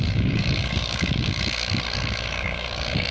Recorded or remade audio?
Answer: remade